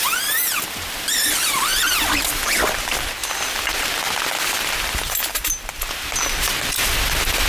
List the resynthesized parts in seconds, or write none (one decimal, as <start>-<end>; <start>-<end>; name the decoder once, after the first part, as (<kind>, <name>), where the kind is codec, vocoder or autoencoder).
none

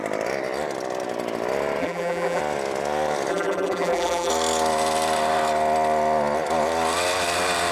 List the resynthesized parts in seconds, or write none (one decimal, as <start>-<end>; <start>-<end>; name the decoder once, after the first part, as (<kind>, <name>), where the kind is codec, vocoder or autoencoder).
1.8-2.4 (vocoder, BigVGAN v2); 3.3-4.3

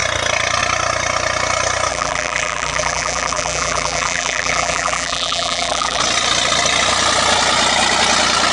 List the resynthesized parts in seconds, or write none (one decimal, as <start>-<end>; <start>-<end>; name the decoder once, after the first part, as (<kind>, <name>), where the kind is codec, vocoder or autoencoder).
1.9-6.0 (vocoder, BigVGAN v2)

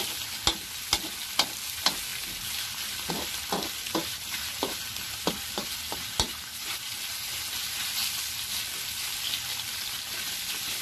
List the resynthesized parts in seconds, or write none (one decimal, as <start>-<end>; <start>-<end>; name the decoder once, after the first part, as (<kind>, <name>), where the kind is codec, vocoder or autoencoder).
4.0-7.8 (vocoder, BigVGAN v2)

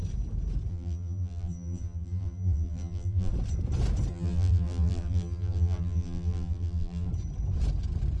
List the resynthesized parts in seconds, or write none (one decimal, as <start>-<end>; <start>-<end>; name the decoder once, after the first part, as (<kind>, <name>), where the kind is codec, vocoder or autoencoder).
0.7-3.3 (vocoder, BigVGAN v2); 4.1-7.1

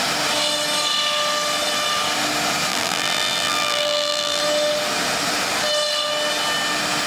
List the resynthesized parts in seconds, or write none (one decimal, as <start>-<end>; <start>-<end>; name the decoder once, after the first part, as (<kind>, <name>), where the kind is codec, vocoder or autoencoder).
2.7-4.4 (vocoder, BigVGAN v2)

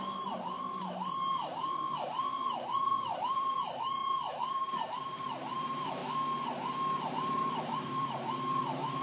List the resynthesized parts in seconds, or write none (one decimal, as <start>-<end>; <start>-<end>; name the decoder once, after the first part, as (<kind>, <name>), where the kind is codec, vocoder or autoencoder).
0.0-4.0 (vocoder, BigVGAN v2); 4.9-6.0; 7.1-9.0